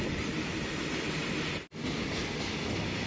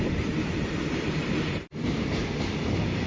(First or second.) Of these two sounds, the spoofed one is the second